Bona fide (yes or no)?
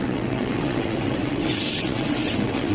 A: no